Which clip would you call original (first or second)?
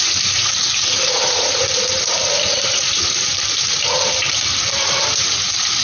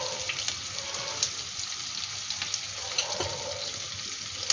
second